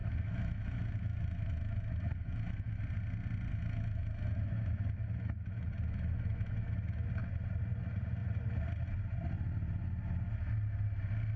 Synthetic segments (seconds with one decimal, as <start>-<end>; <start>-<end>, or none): 0.0-2.8; 3.5-7.1

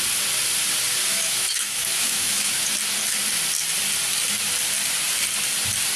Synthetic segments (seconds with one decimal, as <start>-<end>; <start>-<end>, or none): 1.1-2.7

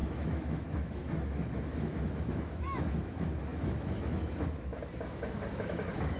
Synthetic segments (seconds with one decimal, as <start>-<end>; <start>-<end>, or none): 0.0-4.7; 5.5-6.2

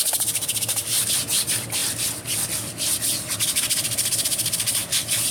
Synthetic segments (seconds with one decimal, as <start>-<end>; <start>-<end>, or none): none

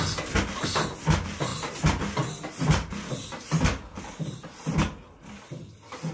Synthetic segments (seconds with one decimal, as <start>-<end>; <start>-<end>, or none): none

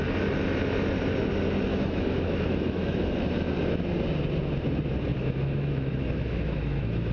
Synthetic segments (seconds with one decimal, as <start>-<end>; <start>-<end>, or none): 1.7-3.2; 5.1-7.1

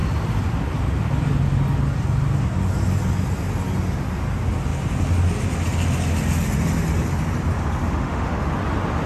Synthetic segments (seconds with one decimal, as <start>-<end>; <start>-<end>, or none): 7.8-8.5

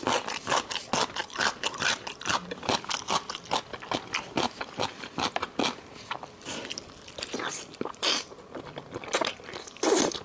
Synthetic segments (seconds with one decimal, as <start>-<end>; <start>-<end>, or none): none